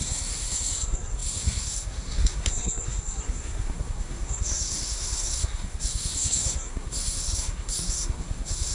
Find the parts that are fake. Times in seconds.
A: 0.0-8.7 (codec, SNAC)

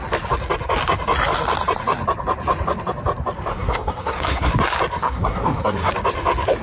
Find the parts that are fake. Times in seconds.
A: 3.5-4.5 (codec, SNAC); 5.0-5.9

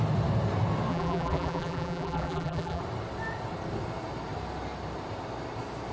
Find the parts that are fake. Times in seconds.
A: 0.9-2.8 (vocoder, BigVGAN v2)

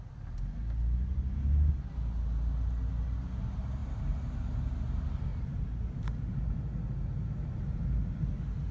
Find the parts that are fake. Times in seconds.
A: none

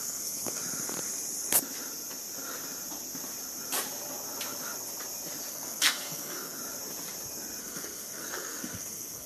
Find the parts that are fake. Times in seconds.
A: 0.0-0.6 (codec, SNAC); 5.5-6.6; 7.6-9.3

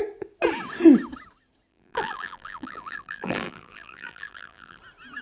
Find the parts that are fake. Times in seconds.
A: 1.7-4.8 (vocoder, BigVGAN v2)